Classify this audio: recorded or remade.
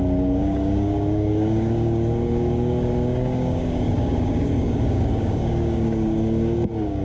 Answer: remade